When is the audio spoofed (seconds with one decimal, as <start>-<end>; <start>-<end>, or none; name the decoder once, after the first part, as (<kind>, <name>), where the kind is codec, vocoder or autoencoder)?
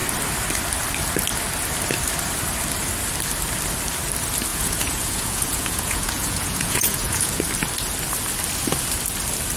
4.5-7.4 (vocoder, Vocos)